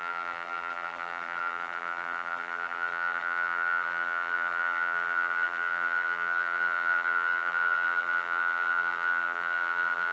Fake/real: fake